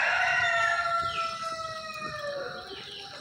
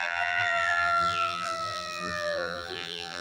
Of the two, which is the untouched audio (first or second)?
first